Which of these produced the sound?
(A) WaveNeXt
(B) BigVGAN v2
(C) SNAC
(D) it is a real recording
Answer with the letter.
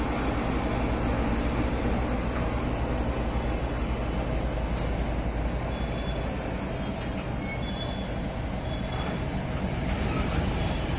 D